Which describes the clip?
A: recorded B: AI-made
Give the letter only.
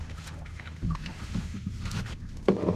B